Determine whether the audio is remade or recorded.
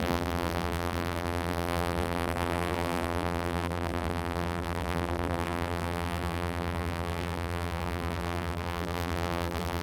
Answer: remade